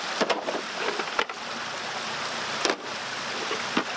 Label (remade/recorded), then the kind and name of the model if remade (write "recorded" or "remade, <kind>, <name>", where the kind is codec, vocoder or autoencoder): recorded